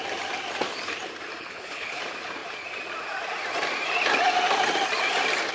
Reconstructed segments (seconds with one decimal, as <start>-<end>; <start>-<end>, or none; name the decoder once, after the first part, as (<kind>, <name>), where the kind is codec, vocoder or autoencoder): 1.4-2.0 (codec, HILCodec)